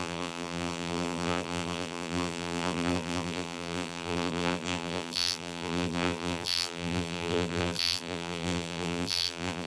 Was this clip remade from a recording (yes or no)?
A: yes